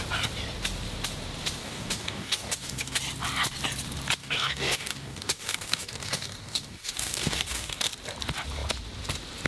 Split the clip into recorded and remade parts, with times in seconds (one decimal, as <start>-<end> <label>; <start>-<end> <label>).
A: 0.0-1.6 recorded; 1.6-3.0 remade; 3.0-4.2 recorded; 4.2-7.9 remade; 7.9-9.5 recorded